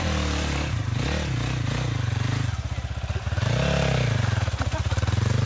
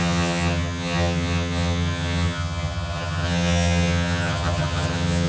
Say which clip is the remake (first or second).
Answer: second